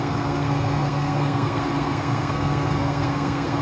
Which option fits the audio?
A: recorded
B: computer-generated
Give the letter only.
B